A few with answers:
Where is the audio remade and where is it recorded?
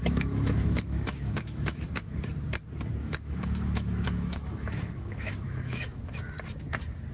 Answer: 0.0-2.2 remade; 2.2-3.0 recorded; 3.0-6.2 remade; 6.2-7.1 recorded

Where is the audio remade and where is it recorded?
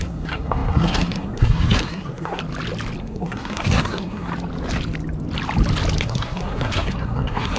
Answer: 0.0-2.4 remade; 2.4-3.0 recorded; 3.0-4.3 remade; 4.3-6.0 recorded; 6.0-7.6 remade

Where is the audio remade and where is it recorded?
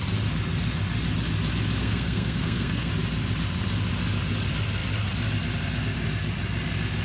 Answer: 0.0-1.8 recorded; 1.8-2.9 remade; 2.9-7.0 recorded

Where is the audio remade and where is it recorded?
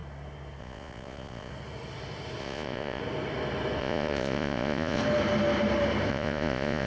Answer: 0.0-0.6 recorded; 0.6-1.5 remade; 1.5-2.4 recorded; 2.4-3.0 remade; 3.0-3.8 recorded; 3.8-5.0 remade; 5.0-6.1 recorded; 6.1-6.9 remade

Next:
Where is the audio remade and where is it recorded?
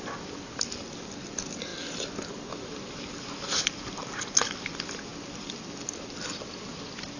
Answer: 0.0-7.2 recorded